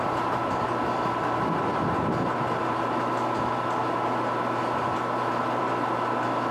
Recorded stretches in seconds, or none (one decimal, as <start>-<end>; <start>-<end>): 0.0-6.5